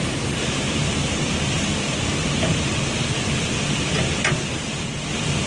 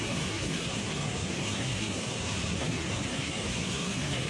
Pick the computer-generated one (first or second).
second